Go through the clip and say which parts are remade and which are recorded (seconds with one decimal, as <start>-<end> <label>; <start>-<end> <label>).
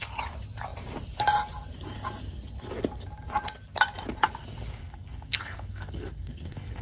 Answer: 0.0-4.8 recorded; 4.8-6.8 remade